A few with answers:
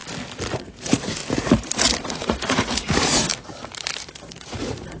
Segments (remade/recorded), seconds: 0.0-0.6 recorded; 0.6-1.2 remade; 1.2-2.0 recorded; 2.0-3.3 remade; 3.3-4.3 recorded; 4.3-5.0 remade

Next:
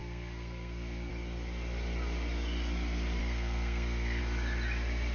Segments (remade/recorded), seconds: 0.0-1.1 remade; 1.1-3.2 recorded; 3.2-4.2 remade; 4.2-5.1 recorded